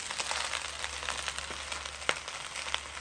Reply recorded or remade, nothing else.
recorded